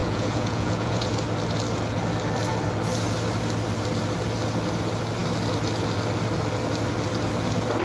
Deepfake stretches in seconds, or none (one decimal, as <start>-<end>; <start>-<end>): 0.0-1.1

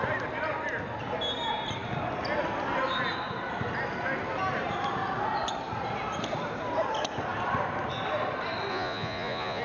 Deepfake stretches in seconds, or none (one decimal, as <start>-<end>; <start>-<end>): 8.7-9.6

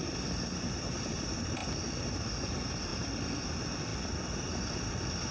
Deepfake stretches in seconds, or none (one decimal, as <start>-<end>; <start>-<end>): 0.0-5.3